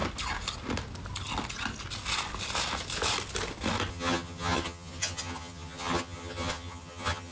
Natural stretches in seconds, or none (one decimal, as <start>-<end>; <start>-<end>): 0.0-3.9